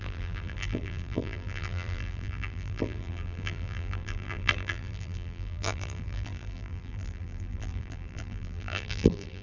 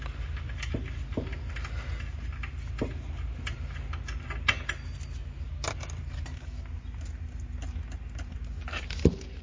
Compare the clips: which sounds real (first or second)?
second